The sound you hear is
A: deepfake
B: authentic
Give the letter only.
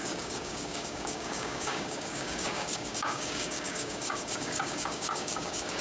A